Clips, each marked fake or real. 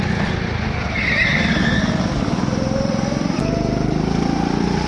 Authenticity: fake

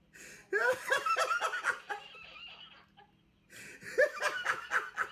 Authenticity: real